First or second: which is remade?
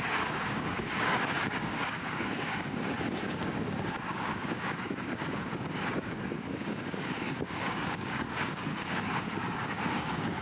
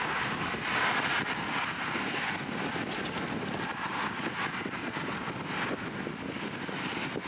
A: first